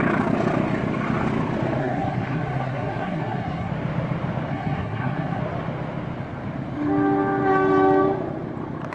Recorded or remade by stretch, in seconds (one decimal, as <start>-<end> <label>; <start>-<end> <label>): 0.0-1.8 recorded; 1.8-3.7 remade; 3.7-4.5 recorded; 4.5-5.4 remade; 5.4-8.9 recorded